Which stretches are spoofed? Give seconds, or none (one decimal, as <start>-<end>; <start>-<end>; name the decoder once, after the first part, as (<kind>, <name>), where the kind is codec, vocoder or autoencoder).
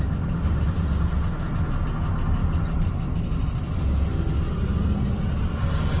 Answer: none